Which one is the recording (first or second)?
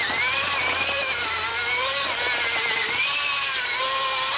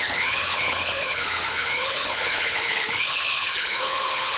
first